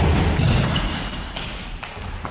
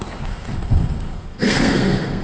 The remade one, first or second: second